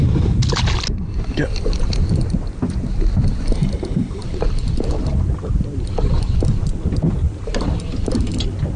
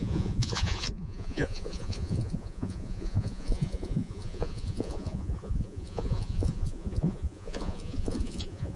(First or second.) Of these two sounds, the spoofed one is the second